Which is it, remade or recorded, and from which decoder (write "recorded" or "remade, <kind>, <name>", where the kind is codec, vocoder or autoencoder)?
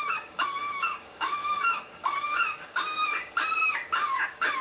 remade, codec, DAC